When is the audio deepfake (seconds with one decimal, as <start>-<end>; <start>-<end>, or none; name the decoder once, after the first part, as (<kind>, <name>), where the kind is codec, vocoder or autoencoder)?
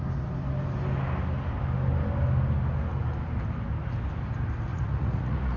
4.7-5.6 (vocoder, Vocos)